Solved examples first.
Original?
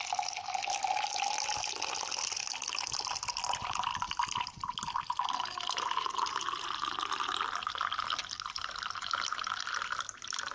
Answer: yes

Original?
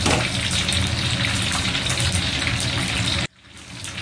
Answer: yes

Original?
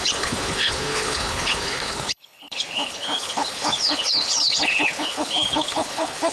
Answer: no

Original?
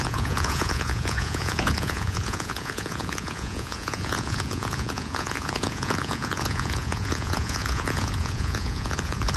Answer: no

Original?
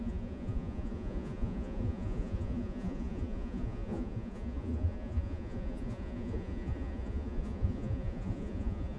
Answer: no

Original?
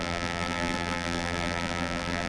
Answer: no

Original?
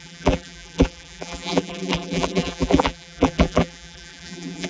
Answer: no